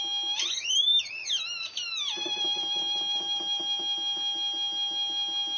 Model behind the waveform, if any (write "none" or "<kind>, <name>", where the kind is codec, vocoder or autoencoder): none